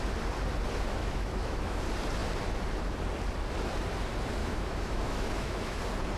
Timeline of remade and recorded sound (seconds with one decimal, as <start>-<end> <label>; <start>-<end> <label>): 0.0-1.0 recorded; 1.0-1.8 remade; 1.8-4.4 recorded; 4.4-5.8 remade; 5.8-6.2 recorded